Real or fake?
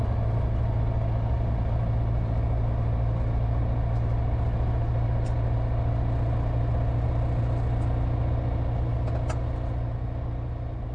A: real